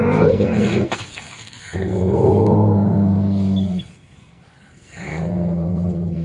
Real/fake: fake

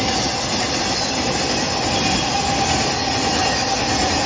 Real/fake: real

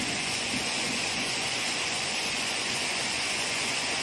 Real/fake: fake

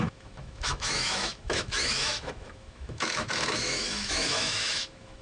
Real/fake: fake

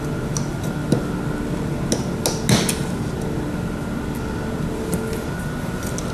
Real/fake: real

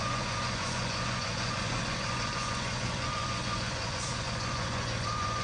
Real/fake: fake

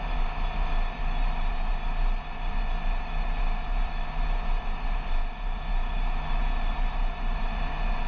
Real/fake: fake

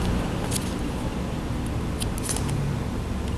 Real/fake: real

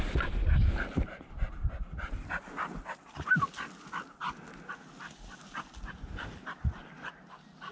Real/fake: real